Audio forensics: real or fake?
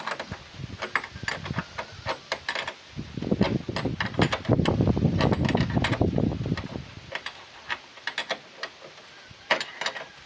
real